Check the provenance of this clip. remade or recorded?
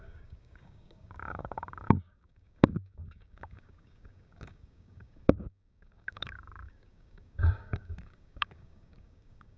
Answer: remade